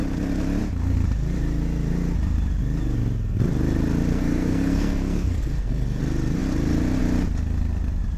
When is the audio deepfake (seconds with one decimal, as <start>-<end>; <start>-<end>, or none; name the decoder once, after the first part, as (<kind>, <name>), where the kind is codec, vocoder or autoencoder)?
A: 4.1-6.0 (codec, SNAC)